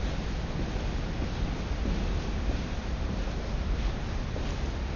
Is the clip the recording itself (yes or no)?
yes